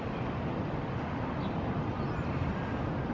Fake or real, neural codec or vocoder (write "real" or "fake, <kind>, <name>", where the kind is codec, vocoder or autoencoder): real